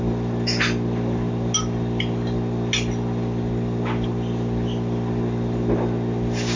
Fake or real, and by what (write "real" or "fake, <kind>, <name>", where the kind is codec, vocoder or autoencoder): real